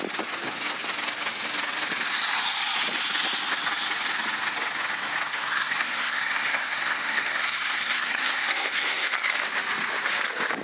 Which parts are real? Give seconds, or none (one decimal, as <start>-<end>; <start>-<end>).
0.0-5.3; 9.1-10.6